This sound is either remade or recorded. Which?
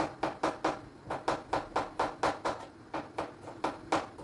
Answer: recorded